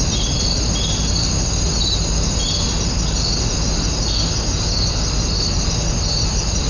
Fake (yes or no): no